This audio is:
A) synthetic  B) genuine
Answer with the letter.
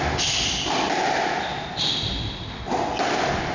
B